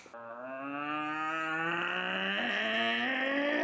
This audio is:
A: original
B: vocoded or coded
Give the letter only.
A